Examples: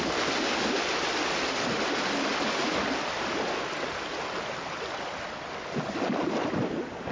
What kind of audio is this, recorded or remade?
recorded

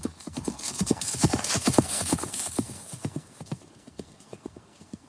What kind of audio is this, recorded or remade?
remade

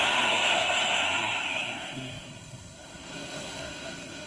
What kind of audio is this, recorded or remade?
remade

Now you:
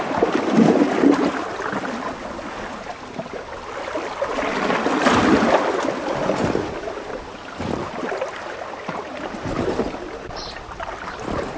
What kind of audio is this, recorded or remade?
recorded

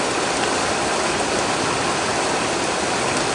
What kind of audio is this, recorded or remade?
recorded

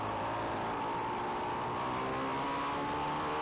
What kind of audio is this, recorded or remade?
remade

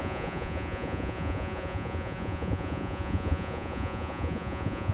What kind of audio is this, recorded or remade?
remade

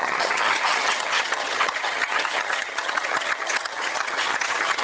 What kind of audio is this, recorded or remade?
remade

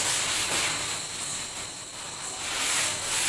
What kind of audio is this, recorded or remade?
recorded